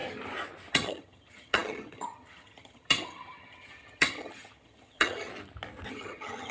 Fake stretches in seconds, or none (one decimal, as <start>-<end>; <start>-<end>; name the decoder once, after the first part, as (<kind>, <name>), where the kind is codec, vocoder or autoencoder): 0.7-5.3 (vocoder, HiFi-GAN); 5.9-6.5